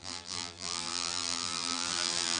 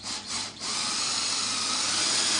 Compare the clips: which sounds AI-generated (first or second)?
first